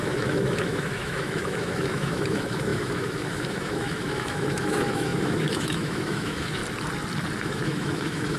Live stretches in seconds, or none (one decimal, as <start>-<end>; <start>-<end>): 6.6-7.4